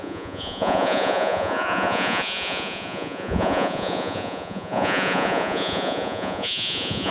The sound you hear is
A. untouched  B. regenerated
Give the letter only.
B